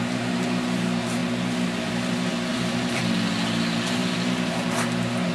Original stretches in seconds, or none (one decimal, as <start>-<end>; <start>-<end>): 0.0-2.5; 3.0-5.3